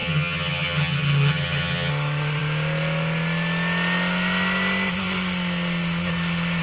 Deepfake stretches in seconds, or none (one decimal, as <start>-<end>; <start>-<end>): 0.0-1.9